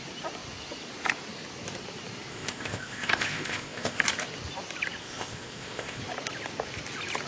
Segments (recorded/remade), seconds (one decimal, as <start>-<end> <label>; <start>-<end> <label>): 0.0-2.3 recorded; 2.3-4.0 remade; 4.0-5.0 recorded; 5.0-6.0 remade; 6.0-7.3 recorded